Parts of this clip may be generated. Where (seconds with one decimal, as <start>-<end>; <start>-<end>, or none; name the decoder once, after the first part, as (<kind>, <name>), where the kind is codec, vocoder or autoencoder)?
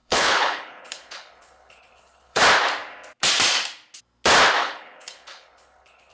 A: 0.0-2.4 (codec, HILCodec); 4.6-6.1